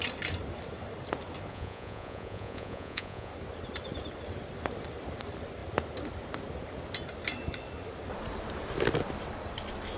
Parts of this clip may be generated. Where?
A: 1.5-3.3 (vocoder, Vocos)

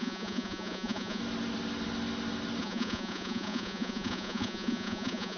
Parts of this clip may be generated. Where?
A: 0.0-1.2 (vocoder, Vocos); 2.6-5.4

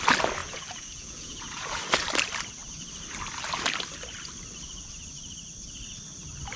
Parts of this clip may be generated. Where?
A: 0.4-1.8 (vocoder, Vocos)